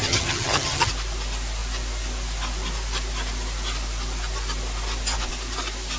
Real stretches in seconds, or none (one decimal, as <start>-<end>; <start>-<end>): 0.9-6.0